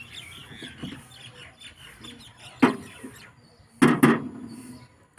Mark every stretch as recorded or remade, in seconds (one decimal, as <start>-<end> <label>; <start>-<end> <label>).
0.0-5.2 recorded